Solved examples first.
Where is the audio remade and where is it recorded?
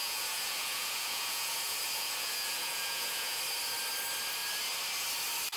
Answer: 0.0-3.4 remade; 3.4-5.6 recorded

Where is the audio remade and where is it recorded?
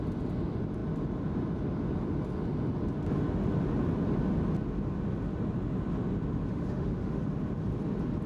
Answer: 0.0-6.5 recorded; 6.5-7.2 remade; 7.2-8.3 recorded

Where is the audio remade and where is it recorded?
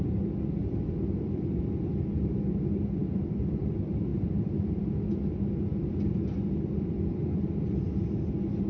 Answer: 0.0-0.6 recorded; 0.6-1.6 remade; 1.6-3.0 recorded; 3.0-3.6 remade; 3.6-4.1 recorded; 4.1-4.9 remade; 4.9-5.7 recorded; 5.7-7.6 remade; 7.6-8.7 recorded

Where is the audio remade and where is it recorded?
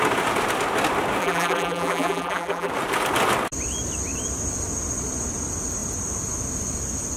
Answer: 0.0-1.2 recorded; 1.2-2.7 remade; 2.7-7.2 recorded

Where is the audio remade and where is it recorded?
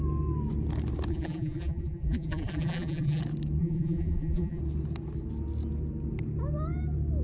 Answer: 0.0-1.1 recorded; 1.1-3.2 remade; 3.2-3.6 recorded; 3.6-4.6 remade; 4.6-7.2 recorded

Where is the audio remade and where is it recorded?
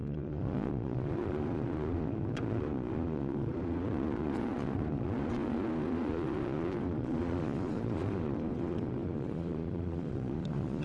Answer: 0.0-10.8 remade